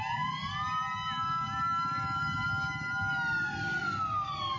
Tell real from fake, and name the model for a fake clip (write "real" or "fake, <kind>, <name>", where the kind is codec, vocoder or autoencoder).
real